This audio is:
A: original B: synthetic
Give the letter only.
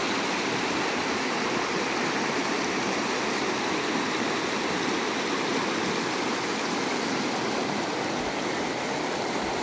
A